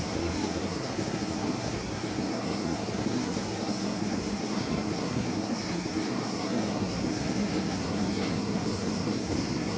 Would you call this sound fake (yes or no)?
yes